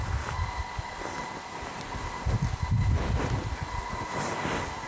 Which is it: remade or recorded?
recorded